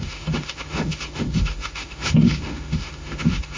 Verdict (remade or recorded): remade